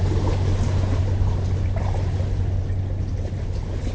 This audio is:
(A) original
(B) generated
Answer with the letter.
A